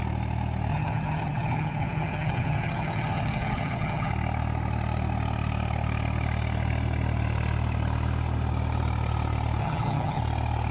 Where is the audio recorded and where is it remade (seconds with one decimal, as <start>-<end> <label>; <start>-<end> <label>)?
0.0-0.7 recorded; 0.7-4.1 remade; 4.1-9.6 recorded; 9.6-10.2 remade; 10.2-10.7 recorded